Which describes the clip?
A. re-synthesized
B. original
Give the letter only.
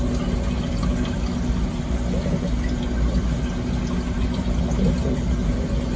B